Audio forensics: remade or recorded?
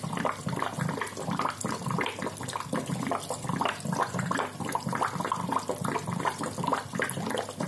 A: recorded